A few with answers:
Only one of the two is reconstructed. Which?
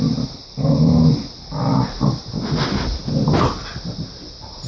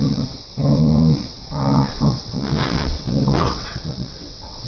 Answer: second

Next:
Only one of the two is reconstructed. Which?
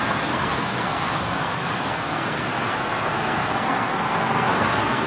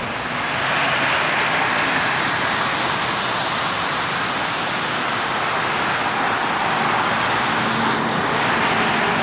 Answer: first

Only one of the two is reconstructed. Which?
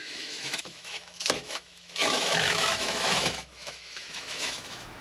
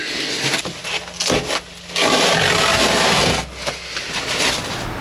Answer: first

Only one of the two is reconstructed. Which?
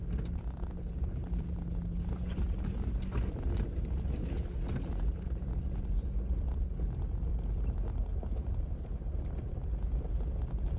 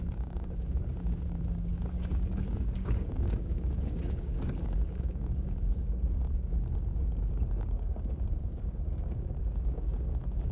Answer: second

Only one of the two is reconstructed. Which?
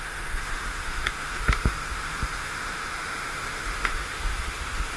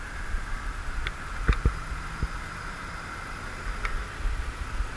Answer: first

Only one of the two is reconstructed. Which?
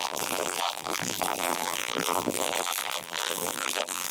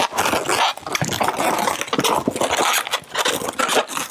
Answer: first